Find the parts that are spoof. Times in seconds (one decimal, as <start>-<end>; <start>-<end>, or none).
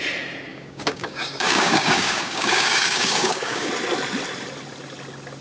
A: 0.5-3.7